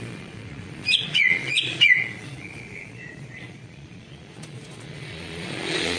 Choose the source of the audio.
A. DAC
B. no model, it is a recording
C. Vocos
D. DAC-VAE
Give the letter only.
C